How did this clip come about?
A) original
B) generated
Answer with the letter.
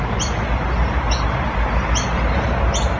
A